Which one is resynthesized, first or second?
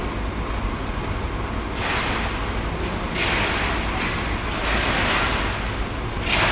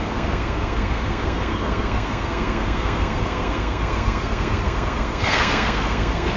second